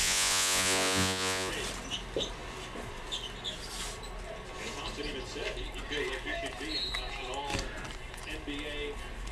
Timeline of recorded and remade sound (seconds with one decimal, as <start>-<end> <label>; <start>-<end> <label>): 0.0-1.5 remade; 1.5-9.3 recorded

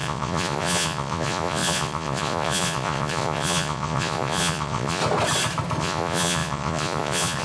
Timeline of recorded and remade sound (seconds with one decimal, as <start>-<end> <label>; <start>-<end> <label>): 0.0-5.0 remade; 5.0-5.8 recorded; 5.8-7.4 remade

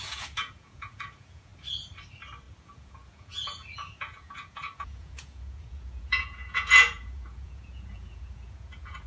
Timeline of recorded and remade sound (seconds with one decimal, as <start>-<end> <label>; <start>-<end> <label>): 0.0-1.5 remade; 1.5-2.6 recorded; 2.6-9.1 remade